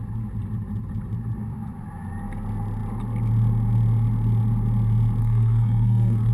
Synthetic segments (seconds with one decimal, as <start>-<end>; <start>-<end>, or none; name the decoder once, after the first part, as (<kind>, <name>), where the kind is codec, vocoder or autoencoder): 5.2-6.3 (codec, SNAC)